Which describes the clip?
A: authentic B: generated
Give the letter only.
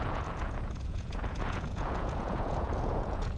B